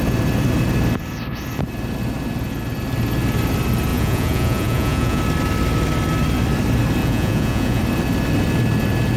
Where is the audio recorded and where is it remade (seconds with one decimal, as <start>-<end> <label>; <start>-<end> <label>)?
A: 0.0-3.9 recorded; 3.9-5.2 remade; 5.2-7.0 recorded; 7.0-7.8 remade; 7.8-9.2 recorded